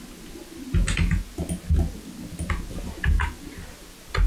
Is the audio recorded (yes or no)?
yes